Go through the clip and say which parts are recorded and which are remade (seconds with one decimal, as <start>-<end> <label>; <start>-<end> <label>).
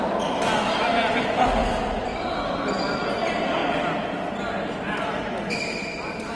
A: 0.0-6.4 recorded